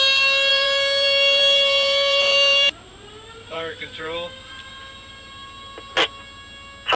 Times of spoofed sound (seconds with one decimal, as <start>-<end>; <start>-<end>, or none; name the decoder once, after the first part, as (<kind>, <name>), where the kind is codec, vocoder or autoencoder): 0.5-4.7 (vocoder, BigVGAN v2)